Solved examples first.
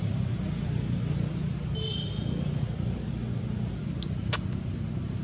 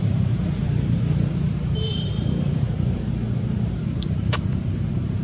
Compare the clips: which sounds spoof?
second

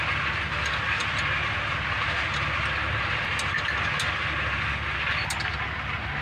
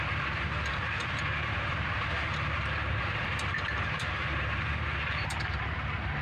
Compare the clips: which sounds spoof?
second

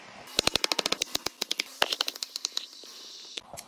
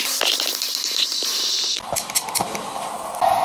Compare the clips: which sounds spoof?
second